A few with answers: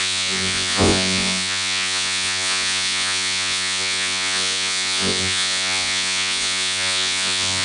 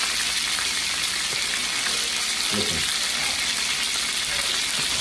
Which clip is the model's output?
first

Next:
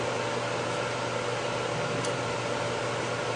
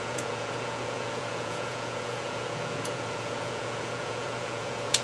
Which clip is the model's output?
second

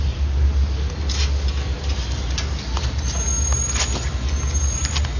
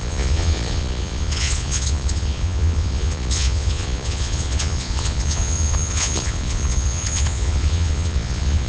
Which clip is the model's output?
second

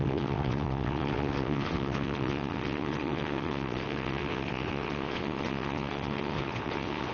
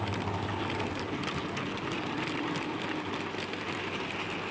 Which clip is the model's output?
first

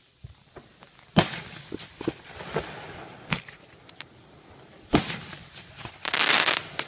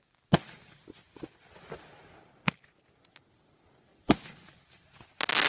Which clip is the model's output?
first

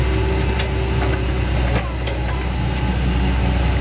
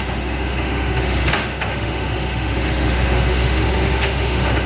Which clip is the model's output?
second